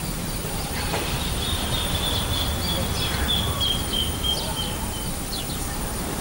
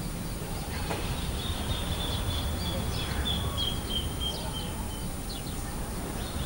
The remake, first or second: first